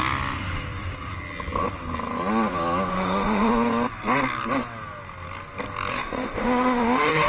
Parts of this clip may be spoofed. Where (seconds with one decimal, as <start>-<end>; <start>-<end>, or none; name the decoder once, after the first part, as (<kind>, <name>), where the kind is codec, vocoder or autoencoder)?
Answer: 2.9-3.5 (autoencoder, DAC-VAE); 5.9-7.3